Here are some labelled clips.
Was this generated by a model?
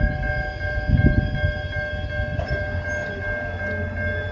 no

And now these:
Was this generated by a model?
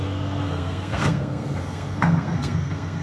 yes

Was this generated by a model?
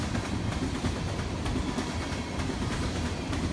yes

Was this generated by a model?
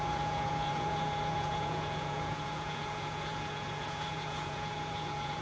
yes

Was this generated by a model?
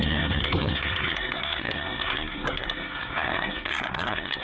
yes